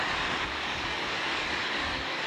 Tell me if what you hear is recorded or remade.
remade